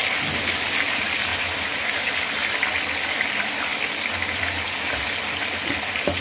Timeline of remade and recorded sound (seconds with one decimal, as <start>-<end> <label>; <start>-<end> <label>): 0.0-6.2 recorded